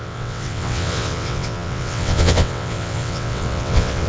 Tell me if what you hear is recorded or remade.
remade